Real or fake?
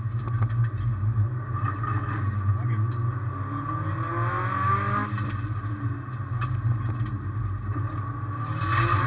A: real